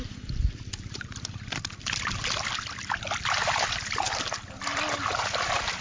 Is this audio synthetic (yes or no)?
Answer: no